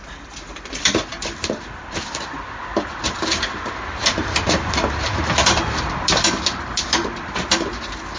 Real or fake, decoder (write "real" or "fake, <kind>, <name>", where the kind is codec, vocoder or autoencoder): fake, vocoder, BigVGAN v2